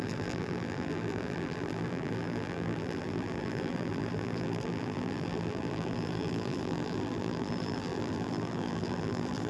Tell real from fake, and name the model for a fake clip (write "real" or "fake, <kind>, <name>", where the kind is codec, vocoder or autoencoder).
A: fake, vocoder, BigVGAN v2